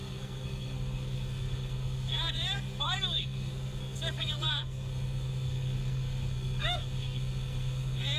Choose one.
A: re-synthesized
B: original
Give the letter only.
A